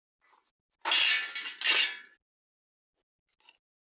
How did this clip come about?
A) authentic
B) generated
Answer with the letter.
A